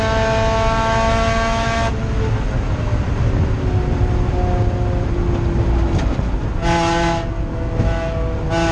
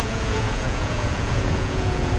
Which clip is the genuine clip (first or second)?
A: first